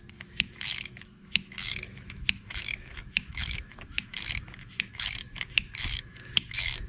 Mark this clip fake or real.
fake